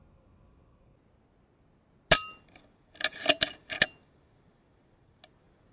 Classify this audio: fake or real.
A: real